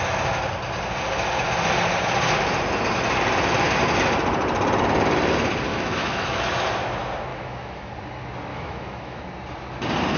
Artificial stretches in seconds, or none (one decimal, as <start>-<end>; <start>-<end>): 5.7-6.5; 7.3-7.9; 8.5-9.2